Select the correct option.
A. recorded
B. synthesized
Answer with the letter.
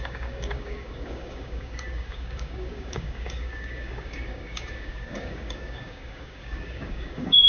B